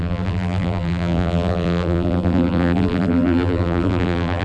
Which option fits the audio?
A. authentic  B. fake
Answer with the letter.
B